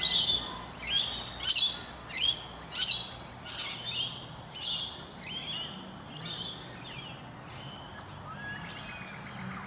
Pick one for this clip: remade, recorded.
recorded